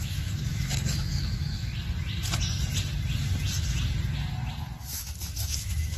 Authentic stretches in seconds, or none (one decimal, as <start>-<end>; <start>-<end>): 1.7-4.8